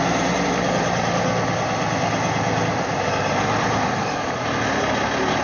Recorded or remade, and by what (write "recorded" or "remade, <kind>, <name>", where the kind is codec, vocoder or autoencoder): recorded